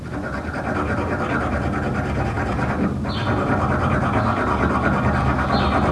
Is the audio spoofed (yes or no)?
no